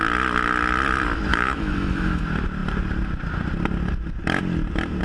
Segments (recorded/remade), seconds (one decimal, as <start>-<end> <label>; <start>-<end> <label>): 0.0-1.3 recorded; 1.3-2.2 remade; 2.2-5.0 recorded